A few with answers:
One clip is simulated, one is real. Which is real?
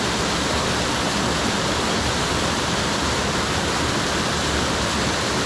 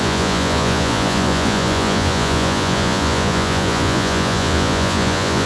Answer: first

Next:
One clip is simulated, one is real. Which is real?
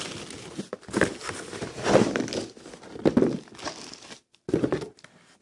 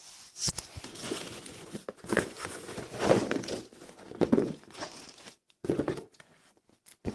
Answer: first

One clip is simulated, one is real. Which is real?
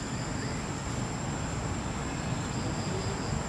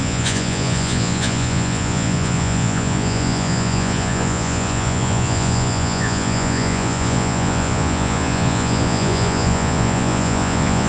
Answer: first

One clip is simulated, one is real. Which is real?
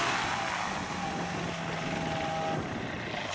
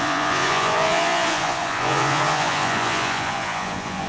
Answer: first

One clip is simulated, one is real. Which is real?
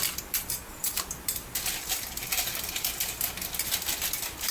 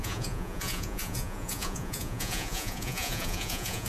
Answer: first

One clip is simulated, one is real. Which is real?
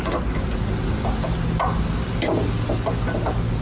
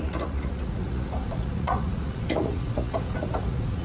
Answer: first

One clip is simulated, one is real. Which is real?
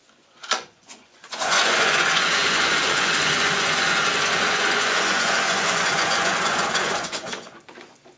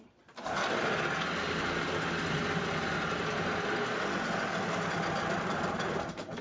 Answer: second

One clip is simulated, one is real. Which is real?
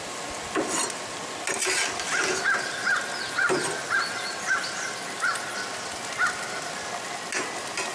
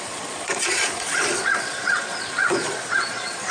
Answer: first